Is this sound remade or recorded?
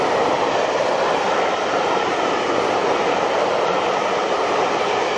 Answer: recorded